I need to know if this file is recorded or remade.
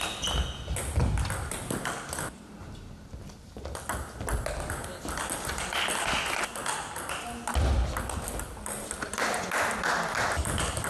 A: recorded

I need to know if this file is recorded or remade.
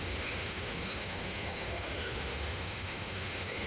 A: remade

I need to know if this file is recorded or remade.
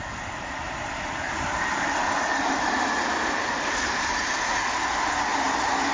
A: recorded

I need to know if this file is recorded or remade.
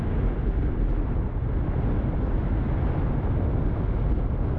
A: recorded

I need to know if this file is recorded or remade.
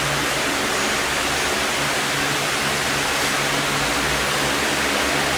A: recorded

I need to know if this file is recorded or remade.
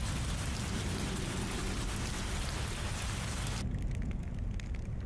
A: recorded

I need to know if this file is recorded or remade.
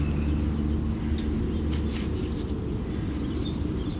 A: recorded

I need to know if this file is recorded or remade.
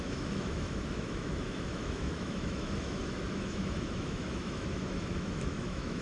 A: remade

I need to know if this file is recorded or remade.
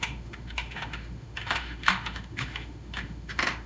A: remade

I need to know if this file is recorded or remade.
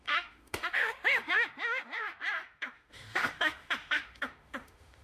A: remade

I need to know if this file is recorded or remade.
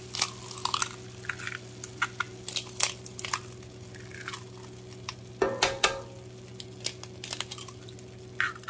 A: recorded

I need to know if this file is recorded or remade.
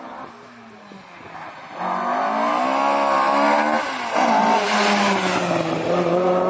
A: recorded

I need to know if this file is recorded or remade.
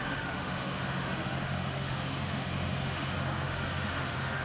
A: remade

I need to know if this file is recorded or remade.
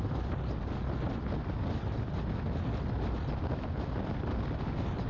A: recorded